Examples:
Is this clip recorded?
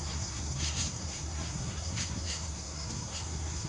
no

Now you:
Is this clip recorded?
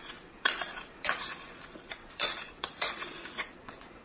no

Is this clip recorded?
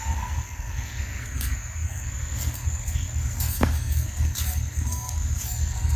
no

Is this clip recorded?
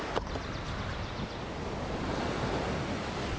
yes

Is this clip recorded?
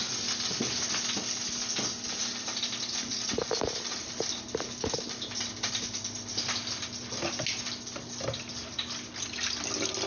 yes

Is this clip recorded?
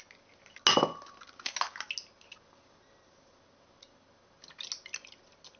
yes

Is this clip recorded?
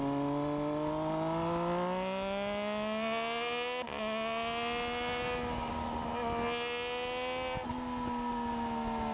yes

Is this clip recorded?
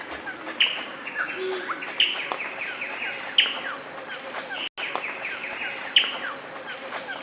yes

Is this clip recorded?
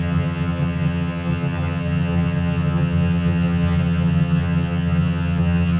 no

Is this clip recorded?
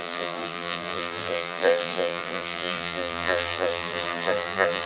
no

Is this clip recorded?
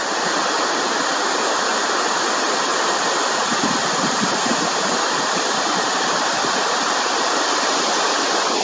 yes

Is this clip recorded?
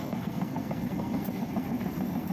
no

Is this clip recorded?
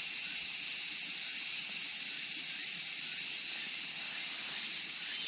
yes